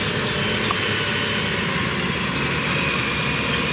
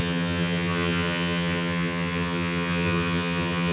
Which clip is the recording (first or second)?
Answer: first